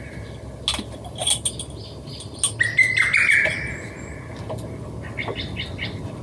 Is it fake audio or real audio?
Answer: real